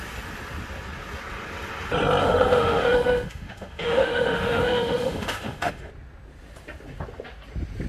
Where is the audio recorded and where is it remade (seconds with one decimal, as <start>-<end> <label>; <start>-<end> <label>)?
0.0-2.2 recorded; 2.2-5.9 remade; 5.9-7.9 recorded

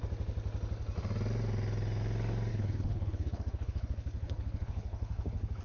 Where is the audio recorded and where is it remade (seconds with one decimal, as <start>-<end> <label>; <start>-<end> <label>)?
0.0-2.5 recorded; 2.5-5.6 remade

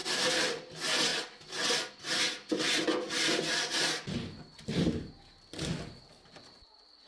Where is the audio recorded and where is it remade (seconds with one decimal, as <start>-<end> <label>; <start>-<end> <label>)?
0.0-0.7 recorded; 0.7-1.1 remade; 1.1-1.9 recorded; 1.9-7.1 remade

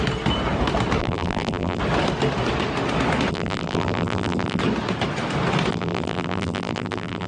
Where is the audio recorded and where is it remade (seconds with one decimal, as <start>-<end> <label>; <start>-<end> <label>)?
0.0-1.0 recorded; 1.0-1.8 remade; 1.8-3.3 recorded; 3.3-4.6 remade; 4.6-5.7 recorded; 5.7-7.3 remade

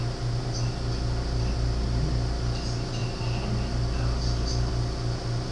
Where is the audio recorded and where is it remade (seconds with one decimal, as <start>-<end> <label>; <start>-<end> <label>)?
0.0-5.5 recorded